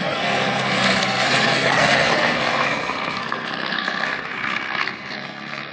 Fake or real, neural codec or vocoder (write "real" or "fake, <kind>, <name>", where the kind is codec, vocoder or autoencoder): fake, codec, SNAC